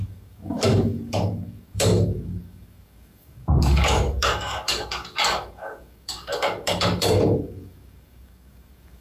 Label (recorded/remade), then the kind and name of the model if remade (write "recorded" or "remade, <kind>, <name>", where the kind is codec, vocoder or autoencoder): remade, codec, DAC